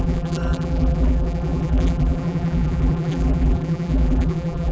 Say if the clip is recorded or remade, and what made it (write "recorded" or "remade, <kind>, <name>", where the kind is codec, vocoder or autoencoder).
remade, vocoder, BigVGAN v2